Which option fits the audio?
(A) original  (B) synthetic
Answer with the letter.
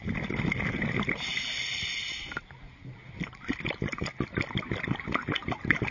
A